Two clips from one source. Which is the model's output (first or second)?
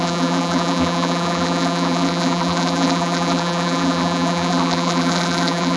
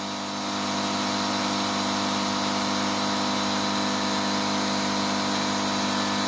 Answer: first